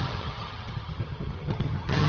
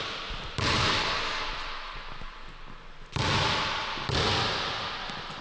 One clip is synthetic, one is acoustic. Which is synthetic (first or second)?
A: first